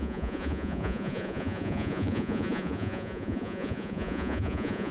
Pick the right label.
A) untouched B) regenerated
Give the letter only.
B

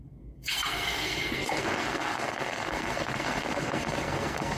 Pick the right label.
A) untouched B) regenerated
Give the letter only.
B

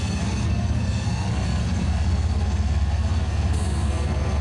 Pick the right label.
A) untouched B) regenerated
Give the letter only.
B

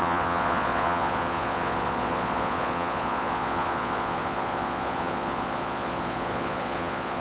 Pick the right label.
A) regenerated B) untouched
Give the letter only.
A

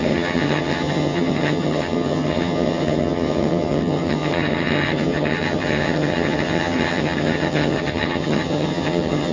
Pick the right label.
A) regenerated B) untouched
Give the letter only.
A